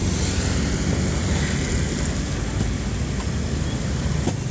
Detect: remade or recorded recorded